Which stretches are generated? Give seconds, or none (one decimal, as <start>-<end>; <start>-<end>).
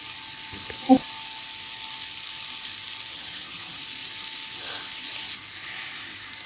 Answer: 3.1-3.8